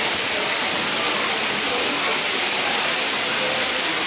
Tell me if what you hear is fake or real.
real